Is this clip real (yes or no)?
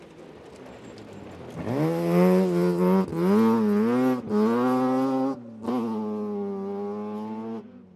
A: yes